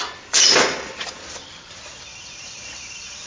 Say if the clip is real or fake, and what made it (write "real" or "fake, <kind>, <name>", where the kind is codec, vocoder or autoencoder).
fake, vocoder, BigVGAN v2